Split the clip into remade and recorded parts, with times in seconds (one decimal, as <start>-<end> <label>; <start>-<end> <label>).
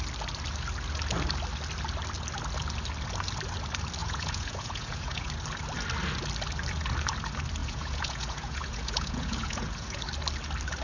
0.0-4.0 recorded; 4.0-5.3 remade; 5.3-7.6 recorded; 7.6-10.0 remade; 10.0-10.8 recorded